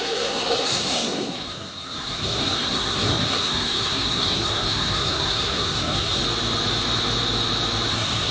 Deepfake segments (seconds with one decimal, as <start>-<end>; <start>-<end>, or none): 0.0-6.2; 7.9-8.3